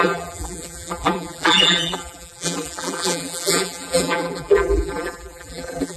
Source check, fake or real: fake